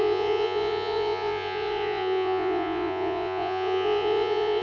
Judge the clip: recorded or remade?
remade